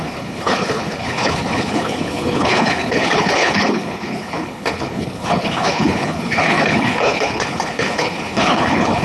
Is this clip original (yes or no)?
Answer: no